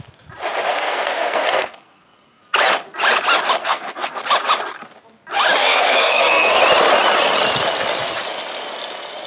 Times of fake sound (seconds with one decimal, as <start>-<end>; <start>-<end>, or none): 0.7-2.4; 3.6-4.2; 5.6-6.6